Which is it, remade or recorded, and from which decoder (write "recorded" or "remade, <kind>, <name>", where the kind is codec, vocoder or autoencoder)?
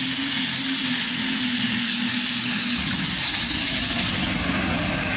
recorded